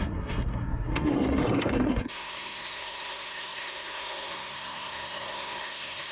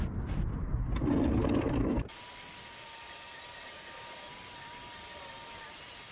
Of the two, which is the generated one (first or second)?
first